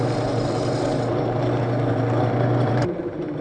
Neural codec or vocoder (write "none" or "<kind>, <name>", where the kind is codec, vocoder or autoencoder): vocoder, BigVGAN v2